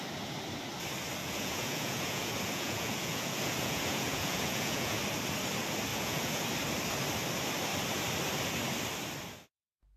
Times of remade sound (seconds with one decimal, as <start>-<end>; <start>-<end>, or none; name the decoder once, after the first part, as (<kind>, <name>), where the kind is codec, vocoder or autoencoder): 1.2-5.0 (vocoder, Vocos); 5.9-6.4